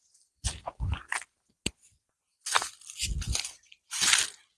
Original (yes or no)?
yes